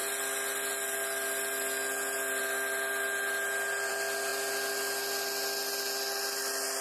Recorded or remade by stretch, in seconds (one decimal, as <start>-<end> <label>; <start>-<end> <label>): 0.0-6.8 recorded